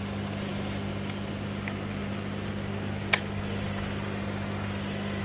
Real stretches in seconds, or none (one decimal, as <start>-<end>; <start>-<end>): 0.0-5.2